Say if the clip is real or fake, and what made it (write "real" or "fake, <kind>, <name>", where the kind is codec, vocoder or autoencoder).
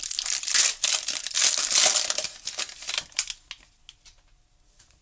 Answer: real